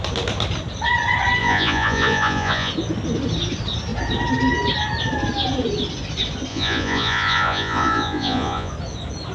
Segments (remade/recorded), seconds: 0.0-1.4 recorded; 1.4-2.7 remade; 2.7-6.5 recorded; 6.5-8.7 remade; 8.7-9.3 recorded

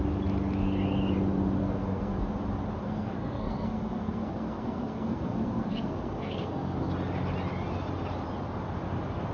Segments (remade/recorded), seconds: 0.0-1.6 recorded; 1.6-2.2 remade; 2.2-2.8 recorded; 2.8-6.8 remade; 6.8-9.3 recorded

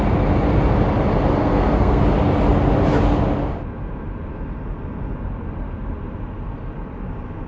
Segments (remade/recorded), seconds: 0.0-1.4 recorded; 1.4-2.0 remade; 2.0-7.5 recorded

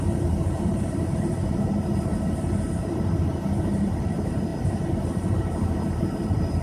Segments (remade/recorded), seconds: 0.0-6.6 remade

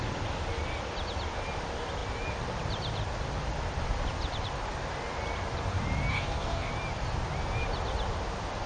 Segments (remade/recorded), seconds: 0.0-6.1 recorded; 6.1-6.7 remade; 6.7-8.7 recorded

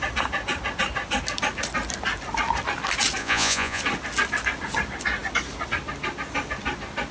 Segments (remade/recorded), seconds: 0.0-3.2 recorded; 3.2-3.8 remade; 3.8-7.1 recorded

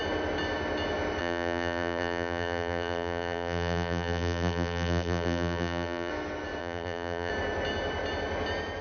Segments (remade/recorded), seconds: 0.0-1.2 recorded; 1.2-6.1 remade; 6.1-6.6 recorded; 6.6-7.3 remade; 7.3-8.8 recorded

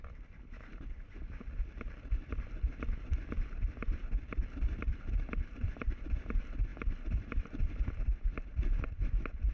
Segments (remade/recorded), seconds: 0.0-0.7 recorded; 0.7-2.0 remade; 2.0-3.8 recorded; 3.8-5.9 remade; 5.9-6.7 recorded; 6.7-7.4 remade; 7.4-9.5 recorded